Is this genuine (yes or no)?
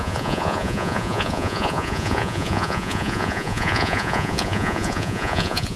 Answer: no